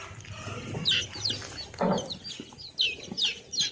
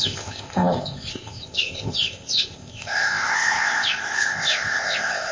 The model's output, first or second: second